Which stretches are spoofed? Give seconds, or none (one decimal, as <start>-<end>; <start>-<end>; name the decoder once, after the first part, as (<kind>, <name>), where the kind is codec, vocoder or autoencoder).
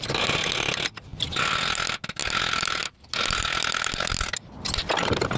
none